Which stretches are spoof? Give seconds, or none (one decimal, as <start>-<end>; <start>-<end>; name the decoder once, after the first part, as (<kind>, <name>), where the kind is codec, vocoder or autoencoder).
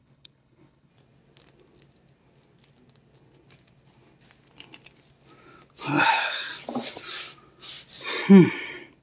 0.0-0.9 (codec, HILCodec); 6.1-6.5